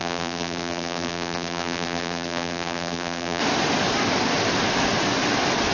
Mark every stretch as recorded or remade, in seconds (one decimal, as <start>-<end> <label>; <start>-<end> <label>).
0.0-3.4 remade; 3.4-5.7 recorded